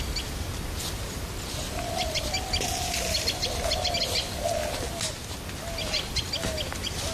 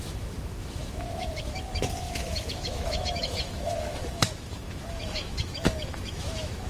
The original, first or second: first